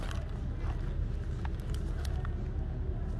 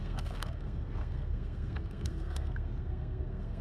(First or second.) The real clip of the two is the first